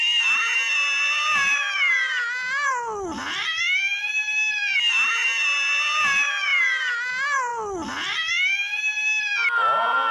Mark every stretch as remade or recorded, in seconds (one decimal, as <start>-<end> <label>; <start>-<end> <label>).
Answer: 0.0-10.1 recorded